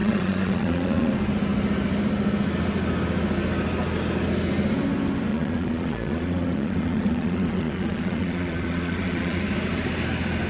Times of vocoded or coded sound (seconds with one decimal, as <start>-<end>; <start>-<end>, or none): 0.0-1.1; 5.3-9.4